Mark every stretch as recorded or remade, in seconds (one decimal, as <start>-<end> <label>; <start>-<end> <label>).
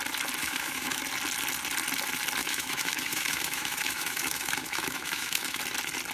0.0-0.4 recorded; 0.4-1.0 remade; 1.0-2.4 recorded; 2.4-5.6 remade; 5.6-6.1 recorded